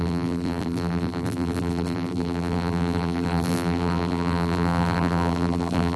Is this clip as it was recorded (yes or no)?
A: no